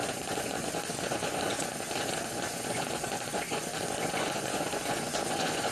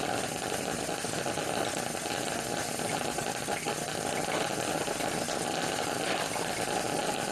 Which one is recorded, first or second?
second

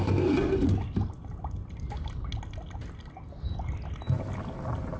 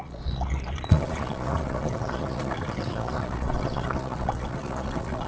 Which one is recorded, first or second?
first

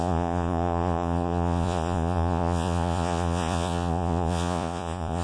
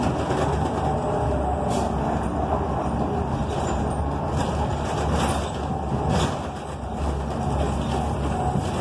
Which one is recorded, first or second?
second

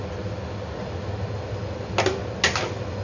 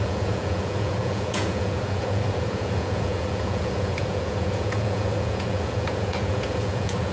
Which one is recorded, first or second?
first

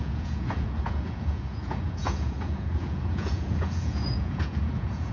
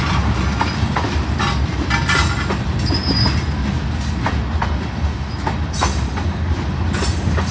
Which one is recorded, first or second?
second